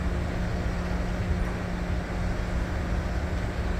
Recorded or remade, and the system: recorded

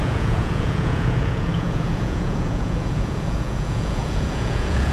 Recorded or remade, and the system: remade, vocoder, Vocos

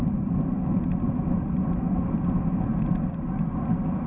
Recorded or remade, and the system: recorded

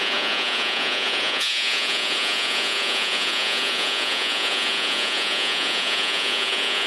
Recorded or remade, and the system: remade, vocoder, Vocos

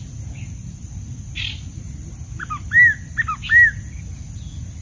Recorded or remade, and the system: recorded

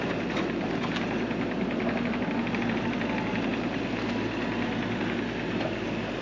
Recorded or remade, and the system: recorded